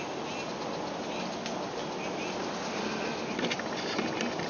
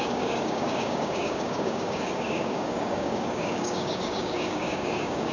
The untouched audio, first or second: first